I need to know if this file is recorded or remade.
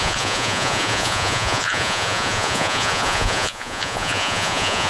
remade